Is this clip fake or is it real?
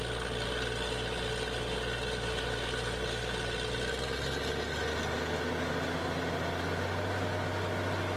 real